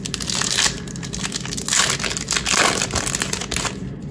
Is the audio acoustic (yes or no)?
yes